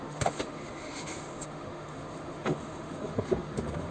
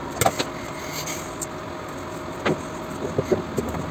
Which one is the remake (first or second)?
first